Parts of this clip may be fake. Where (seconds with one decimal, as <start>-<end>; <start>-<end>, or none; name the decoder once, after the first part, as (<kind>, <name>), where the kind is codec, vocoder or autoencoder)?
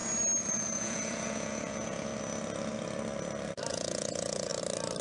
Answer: 0.5-2.1 (vocoder, Vocos); 3.7-4.5